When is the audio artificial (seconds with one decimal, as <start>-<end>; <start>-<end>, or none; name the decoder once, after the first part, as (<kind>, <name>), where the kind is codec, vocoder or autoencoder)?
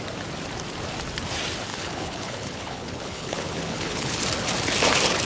1.7-4.2 (codec, HILCodec)